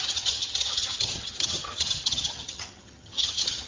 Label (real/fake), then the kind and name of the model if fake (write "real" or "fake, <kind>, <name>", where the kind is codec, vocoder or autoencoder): fake, vocoder, HiFi-GAN